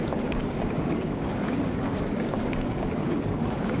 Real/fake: fake